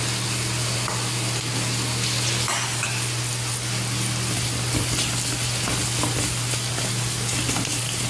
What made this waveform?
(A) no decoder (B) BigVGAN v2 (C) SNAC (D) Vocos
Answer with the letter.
A